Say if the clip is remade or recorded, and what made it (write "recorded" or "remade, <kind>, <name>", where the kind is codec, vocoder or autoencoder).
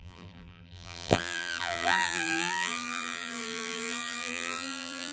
remade, vocoder, BigVGAN v2